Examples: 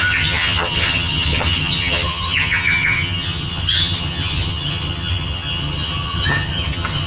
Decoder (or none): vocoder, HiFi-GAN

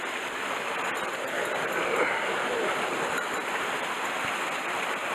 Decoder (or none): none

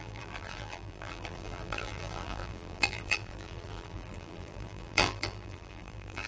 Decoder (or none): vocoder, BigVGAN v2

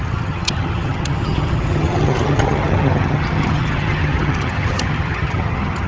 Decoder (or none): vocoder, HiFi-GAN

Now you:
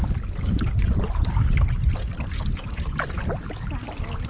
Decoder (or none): none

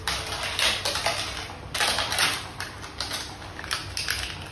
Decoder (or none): none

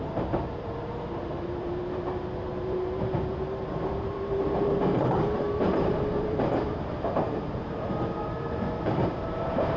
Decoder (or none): vocoder, BigVGAN v2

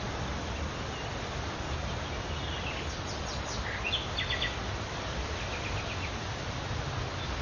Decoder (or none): none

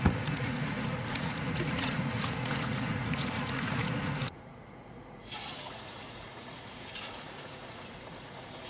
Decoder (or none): vocoder, Vocos